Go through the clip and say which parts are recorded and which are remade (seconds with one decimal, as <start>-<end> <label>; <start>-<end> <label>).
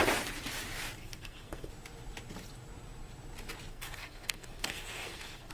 0.0-1.0 recorded; 1.0-1.7 remade; 1.7-3.7 recorded; 3.7-5.5 remade